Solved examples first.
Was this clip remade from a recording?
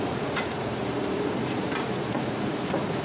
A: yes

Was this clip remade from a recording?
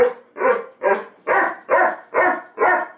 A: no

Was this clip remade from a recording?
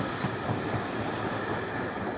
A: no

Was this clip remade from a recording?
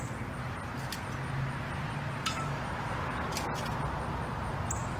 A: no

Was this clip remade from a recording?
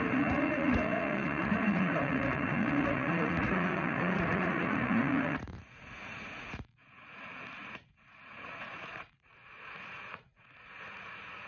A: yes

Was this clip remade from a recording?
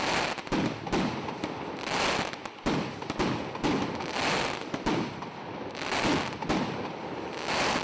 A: no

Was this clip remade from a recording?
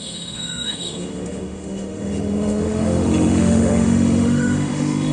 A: yes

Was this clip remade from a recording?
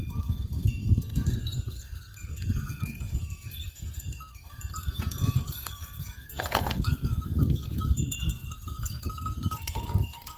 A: yes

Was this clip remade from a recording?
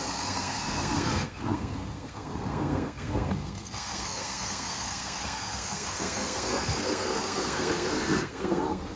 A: yes